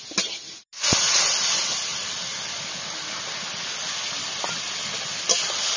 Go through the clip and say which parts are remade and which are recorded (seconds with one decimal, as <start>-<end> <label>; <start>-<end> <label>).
0.0-5.8 recorded